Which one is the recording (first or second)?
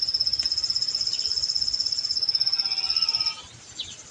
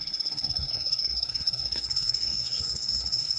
first